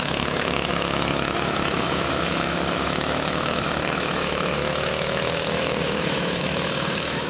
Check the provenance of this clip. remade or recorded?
remade